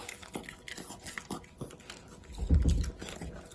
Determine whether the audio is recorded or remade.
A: recorded